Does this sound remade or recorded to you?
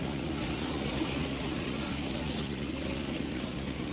remade